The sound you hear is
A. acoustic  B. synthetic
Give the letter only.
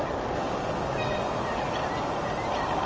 A